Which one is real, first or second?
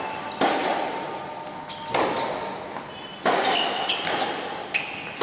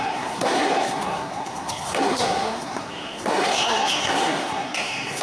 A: first